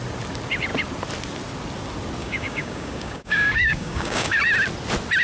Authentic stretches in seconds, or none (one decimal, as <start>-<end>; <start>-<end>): 0.0-2.2; 4.4-5.2